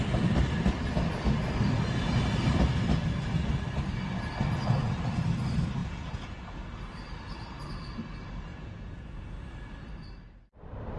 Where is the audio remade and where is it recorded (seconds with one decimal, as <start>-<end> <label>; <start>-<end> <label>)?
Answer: 0.0-5.8 recorded; 5.8-6.6 remade; 6.6-8.5 recorded; 8.5-9.2 remade; 9.2-11.0 recorded